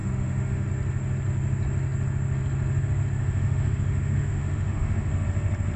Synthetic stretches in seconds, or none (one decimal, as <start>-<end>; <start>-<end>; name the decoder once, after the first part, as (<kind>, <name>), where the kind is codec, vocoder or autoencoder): 0.0-0.7 (autoencoder, DAC-VAE); 3.2-5.1

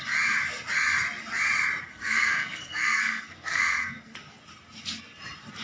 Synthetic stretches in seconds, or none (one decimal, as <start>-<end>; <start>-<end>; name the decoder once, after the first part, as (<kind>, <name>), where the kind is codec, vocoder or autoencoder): 1.9-4.4 (codec, SNAC)

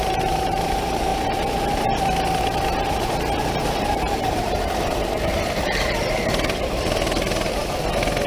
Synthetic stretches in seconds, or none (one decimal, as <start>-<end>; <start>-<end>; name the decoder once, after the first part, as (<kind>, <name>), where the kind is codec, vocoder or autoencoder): 0.0-1.1 (vocoder, BigVGAN v2); 3.8-5.3